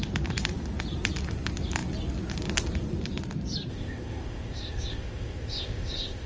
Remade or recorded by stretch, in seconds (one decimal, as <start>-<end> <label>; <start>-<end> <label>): 0.0-3.7 recorded; 3.7-6.3 remade